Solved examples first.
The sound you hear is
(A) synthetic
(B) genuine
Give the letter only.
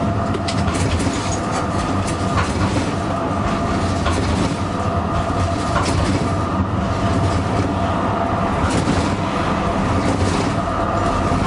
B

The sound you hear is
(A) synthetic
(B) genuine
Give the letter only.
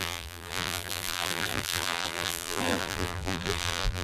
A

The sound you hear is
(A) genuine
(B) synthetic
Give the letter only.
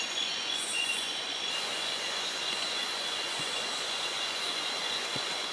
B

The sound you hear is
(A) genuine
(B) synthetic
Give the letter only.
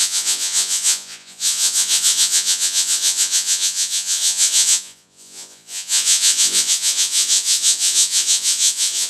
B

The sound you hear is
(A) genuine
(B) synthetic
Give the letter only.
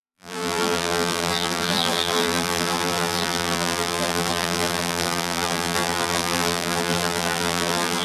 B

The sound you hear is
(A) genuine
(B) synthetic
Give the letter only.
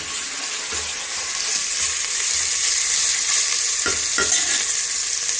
A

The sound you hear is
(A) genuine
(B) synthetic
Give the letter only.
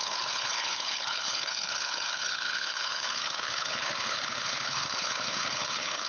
B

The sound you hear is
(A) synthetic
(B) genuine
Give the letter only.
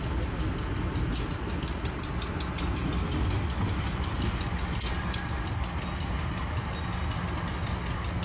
B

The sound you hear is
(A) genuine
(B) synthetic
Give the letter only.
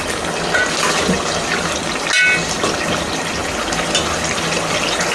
A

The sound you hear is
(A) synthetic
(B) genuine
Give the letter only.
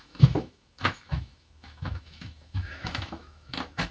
A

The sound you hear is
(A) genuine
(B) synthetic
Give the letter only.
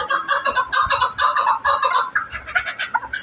A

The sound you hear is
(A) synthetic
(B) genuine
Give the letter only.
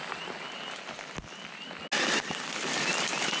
B